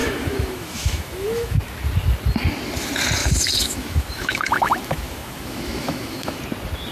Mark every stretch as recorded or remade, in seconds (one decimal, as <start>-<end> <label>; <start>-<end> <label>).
0.0-1.6 remade; 1.6-3.2 recorded; 3.2-6.4 remade; 6.4-6.9 recorded